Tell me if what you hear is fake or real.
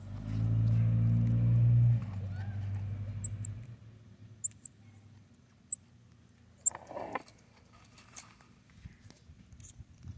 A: real